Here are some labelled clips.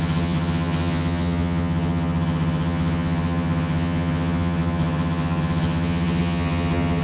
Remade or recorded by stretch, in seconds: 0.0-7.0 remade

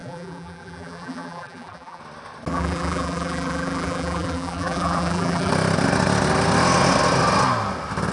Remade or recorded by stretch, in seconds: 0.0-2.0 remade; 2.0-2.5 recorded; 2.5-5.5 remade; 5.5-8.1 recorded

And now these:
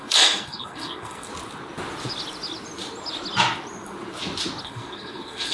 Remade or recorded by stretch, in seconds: 0.0-1.3 remade; 1.3-4.6 recorded; 4.6-5.5 remade